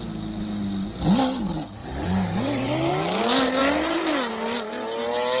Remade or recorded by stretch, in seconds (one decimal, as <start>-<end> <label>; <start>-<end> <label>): 0.0-1.8 recorded; 1.8-2.9 remade; 2.9-5.4 recorded